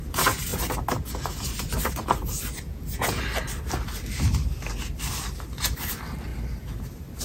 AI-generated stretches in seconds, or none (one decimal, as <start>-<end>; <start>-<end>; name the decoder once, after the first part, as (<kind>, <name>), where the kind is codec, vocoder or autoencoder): 2.7-3.2 (vocoder, Vocos)